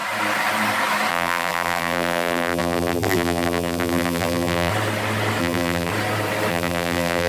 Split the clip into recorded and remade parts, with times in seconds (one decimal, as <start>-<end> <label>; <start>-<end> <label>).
0.0-1.1 recorded; 1.1-4.7 remade; 4.7-5.4 recorded; 5.4-5.9 remade; 5.9-6.5 recorded; 6.5-7.3 remade